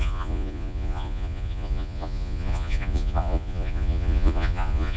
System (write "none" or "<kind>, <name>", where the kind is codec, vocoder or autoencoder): vocoder, Vocos